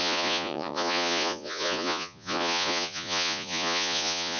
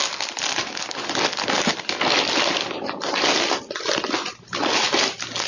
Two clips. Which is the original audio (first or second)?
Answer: second